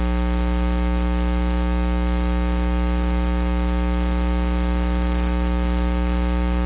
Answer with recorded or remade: recorded